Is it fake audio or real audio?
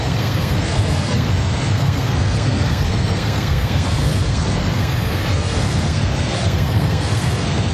fake